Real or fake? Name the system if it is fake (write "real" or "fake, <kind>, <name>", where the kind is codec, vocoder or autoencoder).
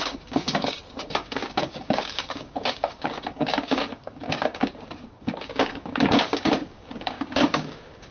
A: fake, codec, DAC